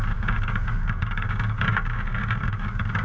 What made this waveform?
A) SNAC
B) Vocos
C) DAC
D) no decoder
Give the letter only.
C